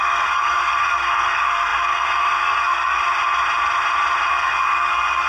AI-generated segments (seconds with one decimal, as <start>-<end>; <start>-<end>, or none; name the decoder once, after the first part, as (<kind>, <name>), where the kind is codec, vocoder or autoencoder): 0.0-3.0 (codec, SNAC); 4.3-5.3